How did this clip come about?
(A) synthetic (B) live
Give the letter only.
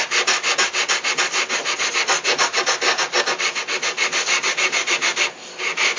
B